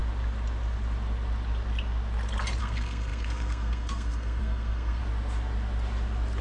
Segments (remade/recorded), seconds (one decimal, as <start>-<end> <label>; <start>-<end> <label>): 0.0-2.6 recorded; 2.6-5.0 remade; 5.0-6.4 recorded